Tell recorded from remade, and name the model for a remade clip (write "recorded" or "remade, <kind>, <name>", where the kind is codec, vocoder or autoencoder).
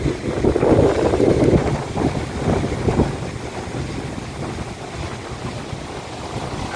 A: recorded